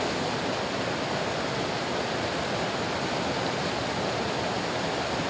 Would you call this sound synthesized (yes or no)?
no